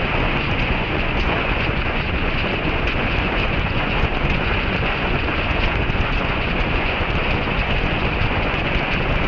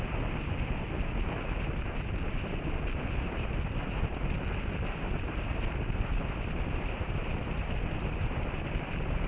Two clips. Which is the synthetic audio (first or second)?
first